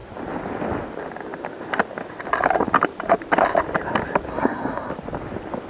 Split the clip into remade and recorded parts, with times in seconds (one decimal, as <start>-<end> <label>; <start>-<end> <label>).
0.0-4.3 recorded; 4.3-4.9 remade; 4.9-5.7 recorded